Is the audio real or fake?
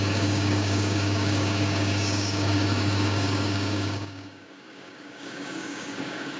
fake